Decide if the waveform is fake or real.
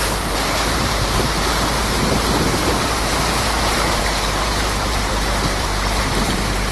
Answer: fake